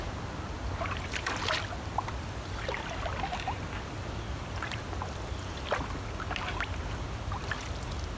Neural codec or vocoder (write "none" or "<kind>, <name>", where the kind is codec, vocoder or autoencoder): none